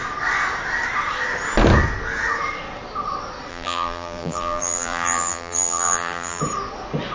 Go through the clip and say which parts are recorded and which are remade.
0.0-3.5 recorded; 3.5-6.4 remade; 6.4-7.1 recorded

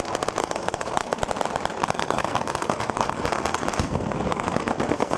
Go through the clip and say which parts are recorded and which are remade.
0.0-0.4 recorded; 0.4-1.2 remade; 1.2-1.8 recorded; 1.8-5.2 remade

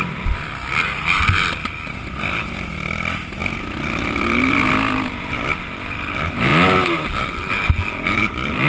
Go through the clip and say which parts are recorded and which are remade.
0.0-6.5 remade; 6.5-7.5 recorded; 7.5-8.7 remade

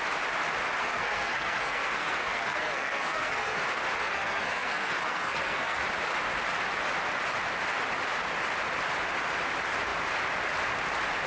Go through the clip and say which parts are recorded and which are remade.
0.0-0.8 recorded; 0.8-3.6 remade; 3.6-4.0 recorded; 4.0-5.8 remade; 5.8-11.3 recorded

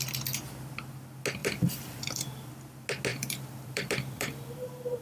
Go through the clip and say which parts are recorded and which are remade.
0.0-1.4 recorded; 1.4-2.5 remade; 2.5-3.1 recorded; 3.1-5.0 remade